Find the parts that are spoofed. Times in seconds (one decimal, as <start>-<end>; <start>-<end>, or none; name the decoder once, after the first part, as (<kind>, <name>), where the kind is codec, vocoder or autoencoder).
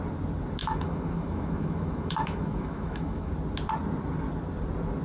0.6-3.3 (autoencoder, DAC-VAE)